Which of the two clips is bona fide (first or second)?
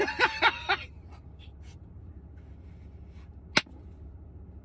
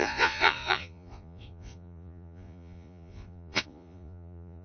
first